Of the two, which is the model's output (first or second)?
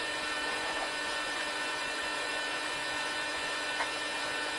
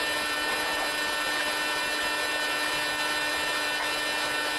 first